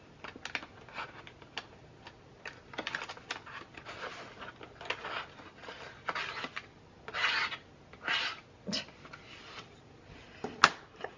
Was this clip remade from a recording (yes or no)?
no